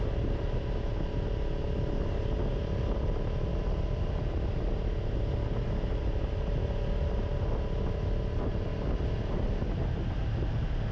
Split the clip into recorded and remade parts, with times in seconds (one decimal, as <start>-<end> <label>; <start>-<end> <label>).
0.0-6.0 recorded; 6.0-6.6 remade; 6.6-8.7 recorded; 8.7-10.1 remade; 10.1-10.9 recorded

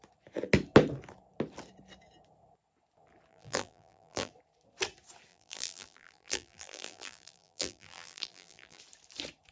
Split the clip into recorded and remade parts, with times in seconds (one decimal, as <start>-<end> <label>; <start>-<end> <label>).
0.0-3.3 recorded; 3.3-4.3 remade; 4.3-5.3 recorded; 5.3-8.8 remade; 8.8-9.5 recorded

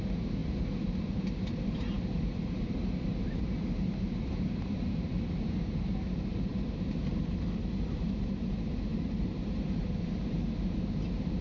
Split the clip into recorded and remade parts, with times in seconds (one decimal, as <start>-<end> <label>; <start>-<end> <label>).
0.0-11.4 remade

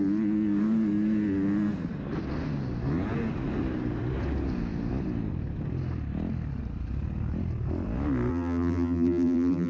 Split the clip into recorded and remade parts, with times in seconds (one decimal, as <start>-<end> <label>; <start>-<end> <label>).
0.0-8.3 recorded; 8.3-9.7 remade

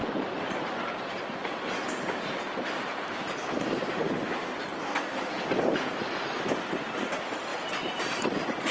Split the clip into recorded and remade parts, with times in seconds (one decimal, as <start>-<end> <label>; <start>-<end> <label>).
0.0-0.5 remade; 0.5-2.5 recorded; 2.5-3.4 remade; 3.4-7.5 recorded; 7.5-8.7 remade